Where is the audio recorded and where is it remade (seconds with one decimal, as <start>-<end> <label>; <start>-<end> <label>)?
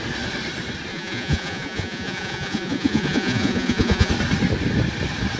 0.0-0.9 recorded; 0.9-4.1 remade; 4.1-5.4 recorded